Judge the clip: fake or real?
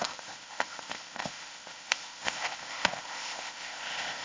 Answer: fake